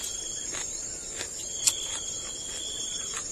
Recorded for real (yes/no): yes